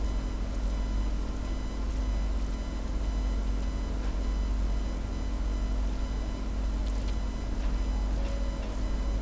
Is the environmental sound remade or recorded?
recorded